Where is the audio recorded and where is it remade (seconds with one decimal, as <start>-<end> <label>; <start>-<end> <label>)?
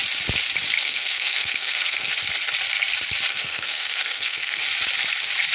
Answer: 0.0-0.8 recorded; 0.8-2.1 remade; 2.1-3.3 recorded; 3.3-4.6 remade; 4.6-5.5 recorded